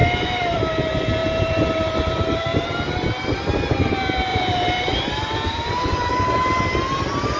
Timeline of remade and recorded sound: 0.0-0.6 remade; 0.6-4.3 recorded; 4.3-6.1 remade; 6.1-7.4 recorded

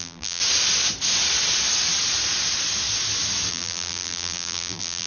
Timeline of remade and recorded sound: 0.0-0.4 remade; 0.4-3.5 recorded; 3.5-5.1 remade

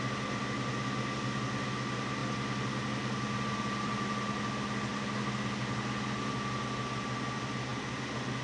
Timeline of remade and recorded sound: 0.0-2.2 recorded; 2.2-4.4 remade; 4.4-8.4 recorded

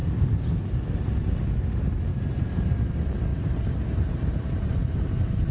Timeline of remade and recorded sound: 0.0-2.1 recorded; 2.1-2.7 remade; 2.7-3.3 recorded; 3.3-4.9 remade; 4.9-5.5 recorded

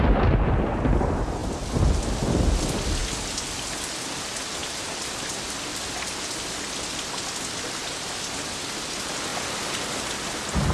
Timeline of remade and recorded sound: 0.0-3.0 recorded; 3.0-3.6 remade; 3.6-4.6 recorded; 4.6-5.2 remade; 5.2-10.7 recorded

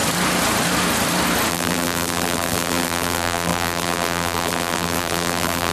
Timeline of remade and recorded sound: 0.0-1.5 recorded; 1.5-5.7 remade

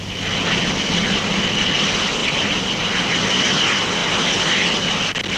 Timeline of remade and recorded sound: 0.0-2.2 recorded; 2.2-2.7 remade; 2.7-5.4 recorded